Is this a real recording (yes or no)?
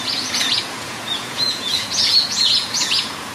no